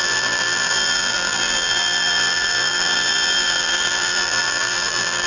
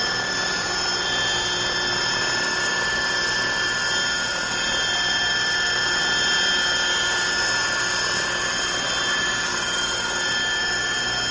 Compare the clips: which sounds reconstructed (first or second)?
first